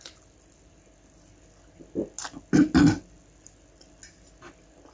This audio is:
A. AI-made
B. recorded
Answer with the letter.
B